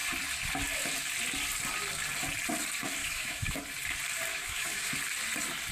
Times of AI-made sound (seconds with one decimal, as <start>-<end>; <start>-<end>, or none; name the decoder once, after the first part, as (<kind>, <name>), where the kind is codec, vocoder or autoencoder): 3.0-3.6 (autoencoder, DAC-VAE); 4.3-4.9